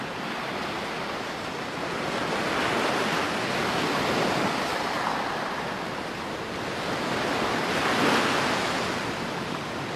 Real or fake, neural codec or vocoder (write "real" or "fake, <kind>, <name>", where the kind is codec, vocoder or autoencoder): real